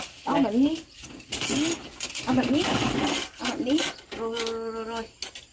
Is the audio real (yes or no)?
yes